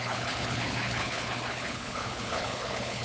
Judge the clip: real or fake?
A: fake